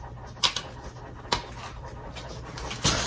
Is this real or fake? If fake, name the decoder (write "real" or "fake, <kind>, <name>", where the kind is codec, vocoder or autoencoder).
real